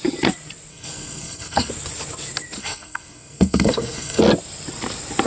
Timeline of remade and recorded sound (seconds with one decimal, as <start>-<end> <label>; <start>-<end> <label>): 0.0-0.7 recorded; 0.7-1.7 remade; 1.7-2.6 recorded; 2.6-4.2 remade; 4.2-5.3 recorded